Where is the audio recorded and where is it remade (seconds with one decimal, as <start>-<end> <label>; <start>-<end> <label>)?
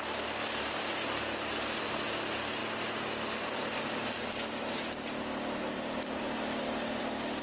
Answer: 0.0-7.4 recorded